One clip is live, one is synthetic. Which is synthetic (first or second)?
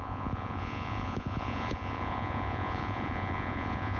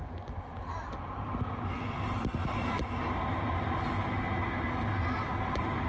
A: first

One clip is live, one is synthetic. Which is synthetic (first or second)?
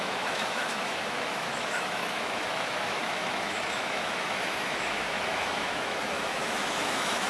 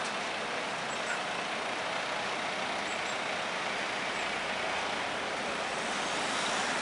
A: first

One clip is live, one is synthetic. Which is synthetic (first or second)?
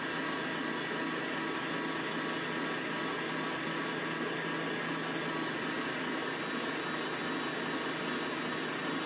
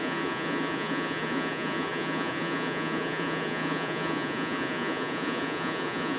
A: second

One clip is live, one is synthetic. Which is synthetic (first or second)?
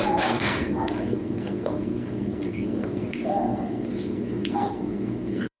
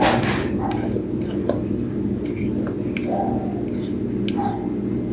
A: first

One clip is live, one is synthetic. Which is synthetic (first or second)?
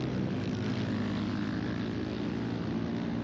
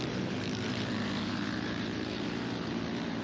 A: second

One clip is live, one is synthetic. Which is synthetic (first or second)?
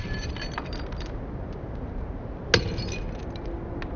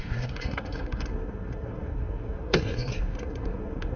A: second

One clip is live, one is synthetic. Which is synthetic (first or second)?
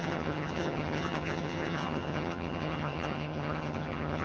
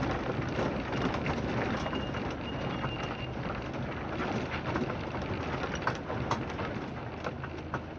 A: first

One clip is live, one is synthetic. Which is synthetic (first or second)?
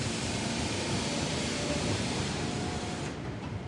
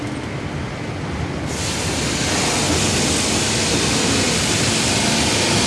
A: first